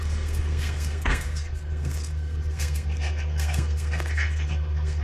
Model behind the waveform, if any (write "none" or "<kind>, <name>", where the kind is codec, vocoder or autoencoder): codec, SNAC